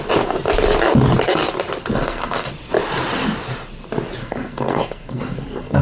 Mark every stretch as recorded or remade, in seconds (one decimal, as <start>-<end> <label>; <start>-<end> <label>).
0.0-1.8 recorded; 1.8-2.5 remade; 2.5-4.2 recorded; 4.2-5.8 remade